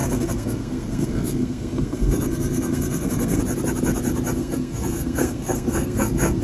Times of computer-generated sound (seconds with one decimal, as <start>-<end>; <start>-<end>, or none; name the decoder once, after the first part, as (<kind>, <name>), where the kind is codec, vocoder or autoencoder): 0.0-3.4 (codec, SNAC); 4.4-6.4